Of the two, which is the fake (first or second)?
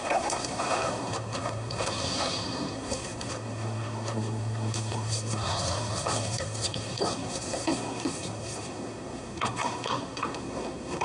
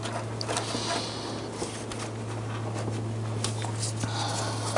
first